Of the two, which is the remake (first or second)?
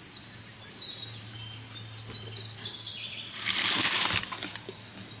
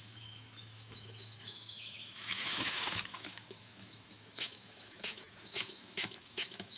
second